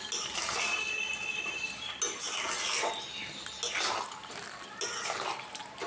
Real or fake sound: real